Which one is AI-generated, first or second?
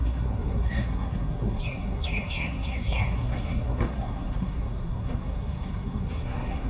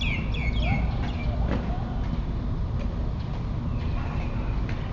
first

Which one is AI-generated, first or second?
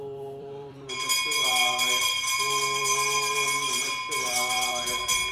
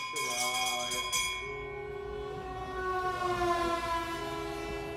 first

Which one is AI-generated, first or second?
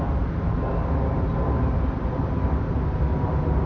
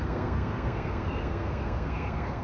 second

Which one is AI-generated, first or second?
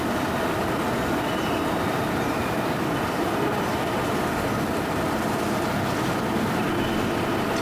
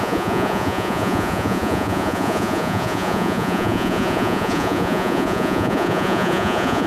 second